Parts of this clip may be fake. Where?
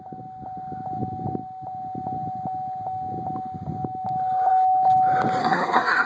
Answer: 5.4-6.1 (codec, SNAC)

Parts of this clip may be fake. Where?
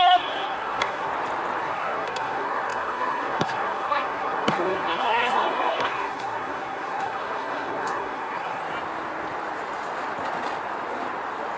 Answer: 0.0-1.1 (codec, SNAC); 1.6-8.6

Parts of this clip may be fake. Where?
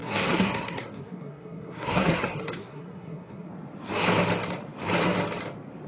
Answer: 0.0-3.5 (codec, SNAC)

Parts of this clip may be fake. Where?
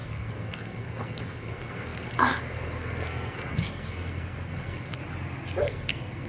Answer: 0.0-5.0 (codec, SNAC); 5.6-6.3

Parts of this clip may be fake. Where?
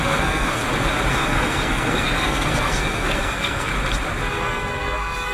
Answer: 0.0-0.6 (codec, SNAC); 1.1-3.7; 4.3-5.3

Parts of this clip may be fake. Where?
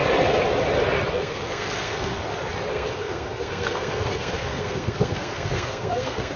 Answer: 1.1-2.2 (codec, SNAC); 2.7-6.4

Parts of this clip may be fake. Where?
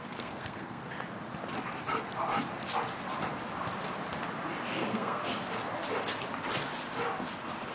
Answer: 0.0-0.8 (codec, SNAC); 4.7-5.2